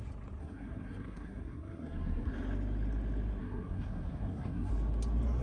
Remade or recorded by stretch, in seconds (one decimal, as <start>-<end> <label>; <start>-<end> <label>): 0.0-0.4 recorded; 0.4-2.3 remade; 2.3-3.4 recorded; 3.4-4.7 remade; 4.7-5.4 recorded